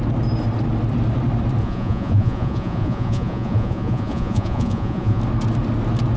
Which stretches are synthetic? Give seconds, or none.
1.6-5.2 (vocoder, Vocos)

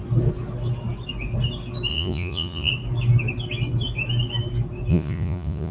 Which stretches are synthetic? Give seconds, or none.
1.9-2.7 (vocoder, Vocos); 4.9-5.7

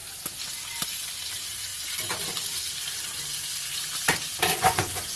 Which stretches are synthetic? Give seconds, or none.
4.5-5.2 (vocoder, Vocos)

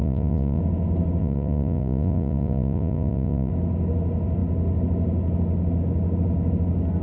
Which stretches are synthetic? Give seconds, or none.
0.0-0.6 (vocoder, Vocos); 1.2-3.5

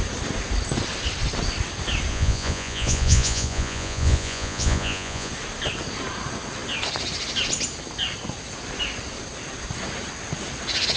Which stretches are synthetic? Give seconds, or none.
2.1-5.3 (vocoder, Vocos)